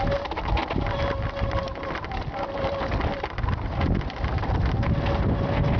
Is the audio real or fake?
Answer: real